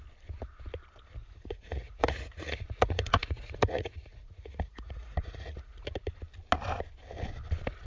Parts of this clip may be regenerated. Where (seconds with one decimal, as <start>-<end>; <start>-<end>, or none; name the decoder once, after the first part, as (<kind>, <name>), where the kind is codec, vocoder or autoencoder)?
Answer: 1.2-5.9 (vocoder, Vocos)